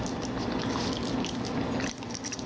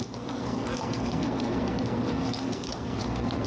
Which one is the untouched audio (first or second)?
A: first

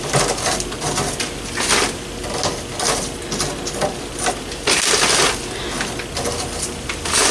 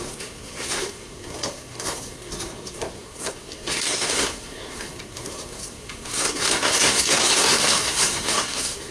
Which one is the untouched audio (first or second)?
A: first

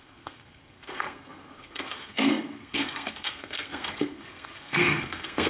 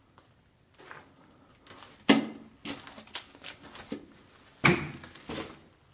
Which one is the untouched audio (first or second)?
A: second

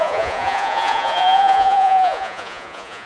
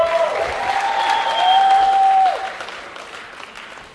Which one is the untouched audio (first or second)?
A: second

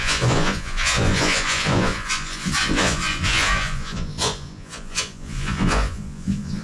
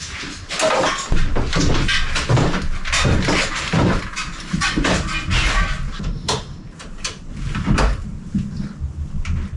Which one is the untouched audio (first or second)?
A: second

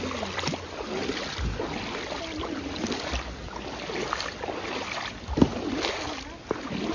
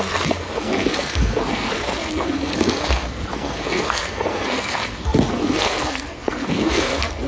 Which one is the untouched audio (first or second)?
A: first